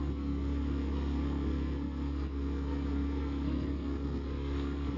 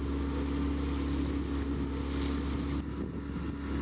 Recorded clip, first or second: second